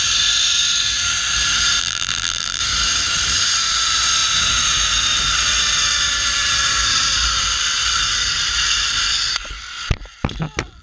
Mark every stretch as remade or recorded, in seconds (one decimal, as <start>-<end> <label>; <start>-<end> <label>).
0.0-1.8 recorded; 1.8-2.6 remade; 2.6-10.8 recorded